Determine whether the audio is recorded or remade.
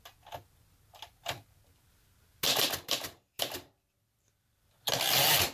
recorded